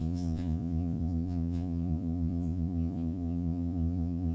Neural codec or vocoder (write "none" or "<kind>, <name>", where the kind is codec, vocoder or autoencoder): vocoder, Vocos